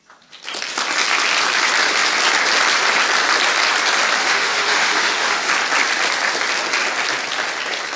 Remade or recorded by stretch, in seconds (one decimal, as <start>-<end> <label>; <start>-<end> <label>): 0.0-4.2 recorded; 4.2-5.5 remade; 5.5-8.0 recorded